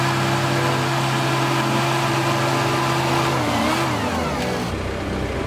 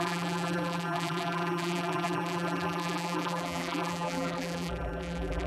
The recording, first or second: first